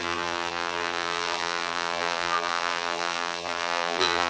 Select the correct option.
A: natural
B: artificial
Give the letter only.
B